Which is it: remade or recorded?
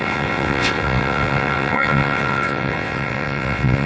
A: remade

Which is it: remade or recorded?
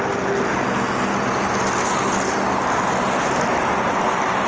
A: recorded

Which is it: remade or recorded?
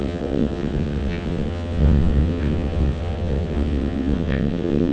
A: remade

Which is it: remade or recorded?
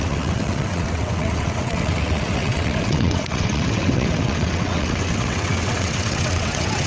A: remade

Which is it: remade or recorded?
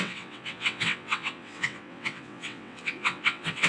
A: remade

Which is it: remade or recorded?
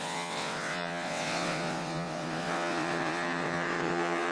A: remade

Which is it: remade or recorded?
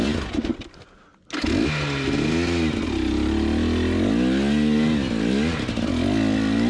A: recorded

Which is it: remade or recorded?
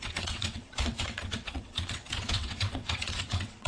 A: remade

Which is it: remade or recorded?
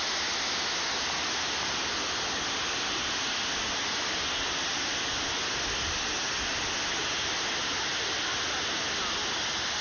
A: recorded